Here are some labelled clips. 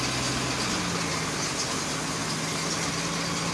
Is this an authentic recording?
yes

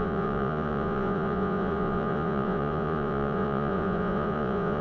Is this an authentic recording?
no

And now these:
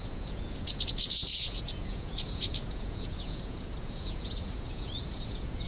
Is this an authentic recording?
no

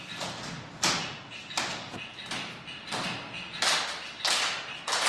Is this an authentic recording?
yes